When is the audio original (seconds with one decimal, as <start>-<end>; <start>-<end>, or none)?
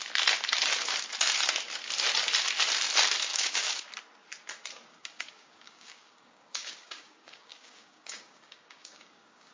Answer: 0.0-3.3; 3.9-4.9